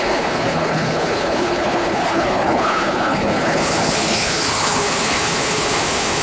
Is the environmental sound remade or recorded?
remade